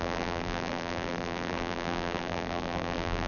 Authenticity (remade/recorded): remade